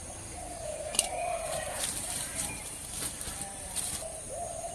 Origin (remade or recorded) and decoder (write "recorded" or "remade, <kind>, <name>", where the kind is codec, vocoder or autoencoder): remade, vocoder, BigVGAN v2